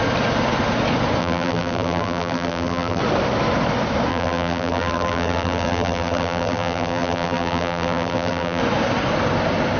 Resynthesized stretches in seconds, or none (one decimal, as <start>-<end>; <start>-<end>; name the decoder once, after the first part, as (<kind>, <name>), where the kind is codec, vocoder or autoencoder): 1.2-3.0 (vocoder, BigVGAN v2); 4.1-8.6